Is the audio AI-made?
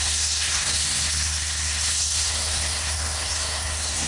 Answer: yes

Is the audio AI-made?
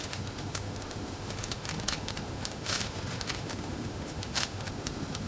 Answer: yes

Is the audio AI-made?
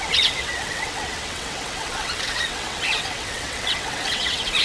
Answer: yes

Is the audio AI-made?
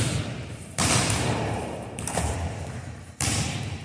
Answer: yes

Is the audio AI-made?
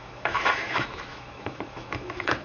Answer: yes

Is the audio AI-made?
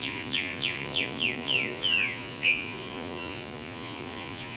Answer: yes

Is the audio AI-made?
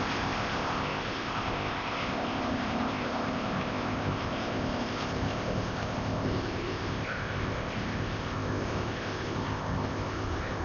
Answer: yes